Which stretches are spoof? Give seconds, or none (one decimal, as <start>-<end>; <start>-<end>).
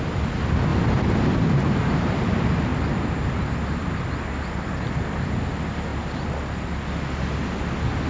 0.7-2.3